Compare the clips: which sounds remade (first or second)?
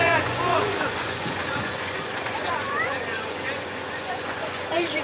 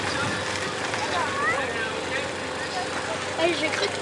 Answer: first